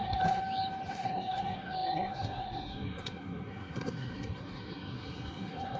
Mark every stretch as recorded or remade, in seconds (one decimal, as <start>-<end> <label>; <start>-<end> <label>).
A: 0.0-0.4 remade; 0.4-0.9 recorded; 0.9-5.8 remade